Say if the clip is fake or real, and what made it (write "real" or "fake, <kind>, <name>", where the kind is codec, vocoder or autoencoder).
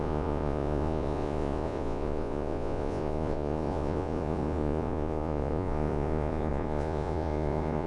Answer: fake, vocoder, Vocos